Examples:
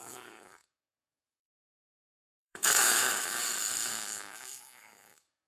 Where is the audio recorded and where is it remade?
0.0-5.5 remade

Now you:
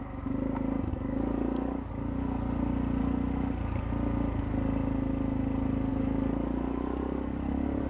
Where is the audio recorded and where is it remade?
0.0-0.9 recorded; 0.9-1.9 remade; 1.9-3.0 recorded; 3.0-3.9 remade; 3.9-5.9 recorded; 5.9-7.9 remade

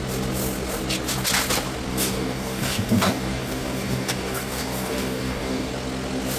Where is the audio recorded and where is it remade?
0.0-1.9 recorded; 1.9-5.7 remade; 5.7-6.4 recorded

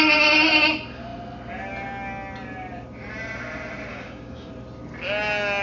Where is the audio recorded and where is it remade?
0.0-3.9 recorded; 3.9-4.5 remade; 4.5-5.6 recorded

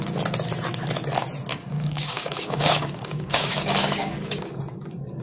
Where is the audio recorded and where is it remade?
0.0-1.5 recorded; 1.5-4.6 remade; 4.6-5.2 recorded

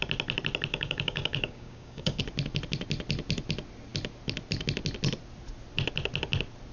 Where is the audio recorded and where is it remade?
0.0-0.7 recorded; 0.7-2.2 remade; 2.2-6.7 recorded